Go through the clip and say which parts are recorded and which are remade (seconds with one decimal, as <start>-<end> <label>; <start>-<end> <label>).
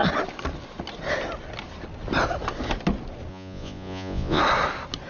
0.0-3.3 recorded; 3.3-4.4 remade; 4.4-5.1 recorded